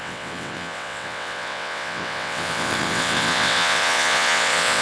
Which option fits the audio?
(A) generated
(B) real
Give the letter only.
A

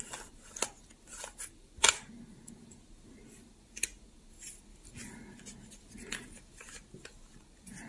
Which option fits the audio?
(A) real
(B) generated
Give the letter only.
A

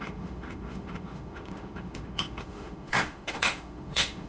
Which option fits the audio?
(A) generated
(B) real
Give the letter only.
A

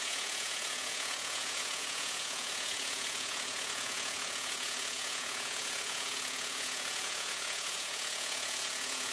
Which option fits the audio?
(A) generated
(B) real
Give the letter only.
A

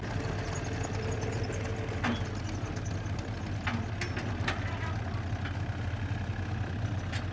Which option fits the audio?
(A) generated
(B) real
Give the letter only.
B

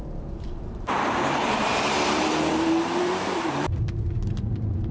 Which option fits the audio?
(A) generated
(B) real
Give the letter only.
A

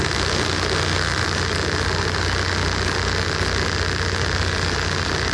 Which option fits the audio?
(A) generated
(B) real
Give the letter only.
B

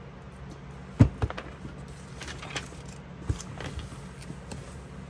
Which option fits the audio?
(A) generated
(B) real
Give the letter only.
B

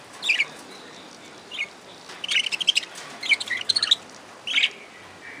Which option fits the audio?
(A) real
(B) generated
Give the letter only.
A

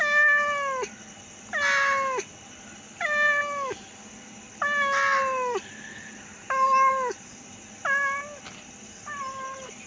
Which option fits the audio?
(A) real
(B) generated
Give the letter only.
A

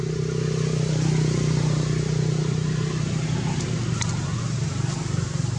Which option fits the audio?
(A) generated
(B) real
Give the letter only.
B